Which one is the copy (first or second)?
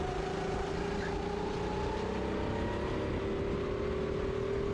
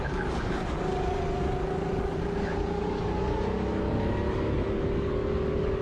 second